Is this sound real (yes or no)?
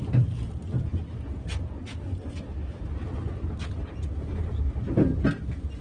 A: yes